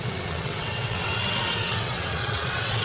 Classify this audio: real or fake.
fake